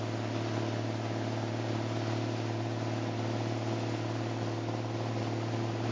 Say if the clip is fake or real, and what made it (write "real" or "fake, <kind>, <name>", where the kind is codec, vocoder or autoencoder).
real